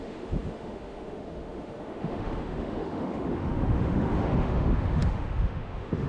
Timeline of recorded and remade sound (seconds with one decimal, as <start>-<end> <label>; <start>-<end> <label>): 0.0-6.1 remade